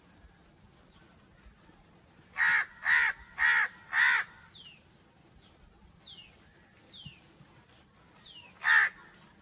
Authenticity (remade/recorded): recorded